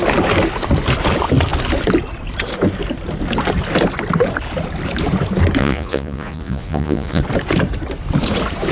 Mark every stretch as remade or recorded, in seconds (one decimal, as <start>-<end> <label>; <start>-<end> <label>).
0.0-5.6 recorded; 5.6-7.2 remade; 7.2-8.7 recorded